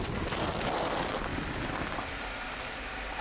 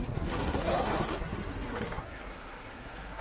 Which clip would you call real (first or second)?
first